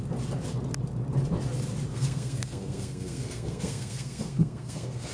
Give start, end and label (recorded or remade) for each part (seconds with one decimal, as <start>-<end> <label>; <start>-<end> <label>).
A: 0.0-1.9 recorded; 1.9-5.1 remade